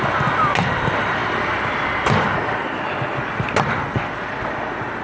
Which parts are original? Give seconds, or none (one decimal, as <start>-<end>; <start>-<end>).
0.0-5.0